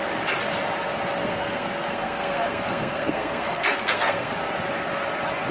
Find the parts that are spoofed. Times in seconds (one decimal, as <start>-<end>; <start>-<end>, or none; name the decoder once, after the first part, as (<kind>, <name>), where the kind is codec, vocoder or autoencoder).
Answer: 1.2-4.3 (codec, SNAC)